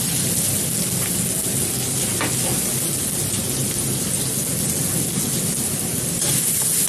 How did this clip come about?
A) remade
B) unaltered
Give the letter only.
B